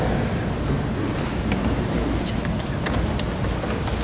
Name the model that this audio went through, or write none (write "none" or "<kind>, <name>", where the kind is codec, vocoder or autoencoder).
none